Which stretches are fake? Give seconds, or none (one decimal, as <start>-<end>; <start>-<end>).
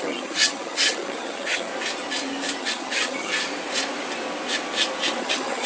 0.0-1.7; 2.6-3.3; 5.2-5.7